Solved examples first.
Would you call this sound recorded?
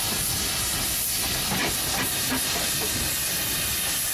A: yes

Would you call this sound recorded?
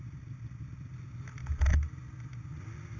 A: yes